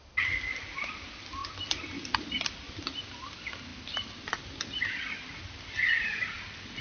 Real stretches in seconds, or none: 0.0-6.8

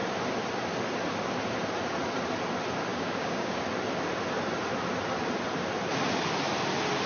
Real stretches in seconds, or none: 0.0-2.9; 3.6-7.1

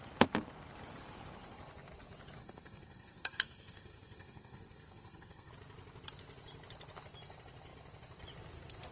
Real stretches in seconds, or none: 0.0-2.4; 5.5-8.9

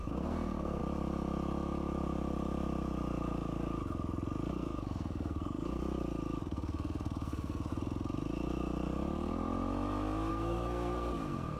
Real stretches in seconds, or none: 0.8-4.5; 5.8-6.4; 7.7-10.3